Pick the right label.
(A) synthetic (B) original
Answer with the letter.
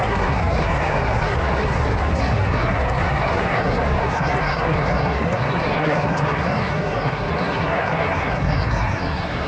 A